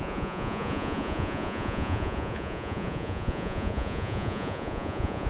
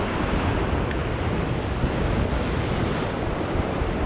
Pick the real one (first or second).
second